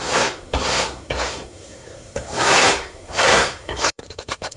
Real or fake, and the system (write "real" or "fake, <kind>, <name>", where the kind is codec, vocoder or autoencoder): fake, codec, SNAC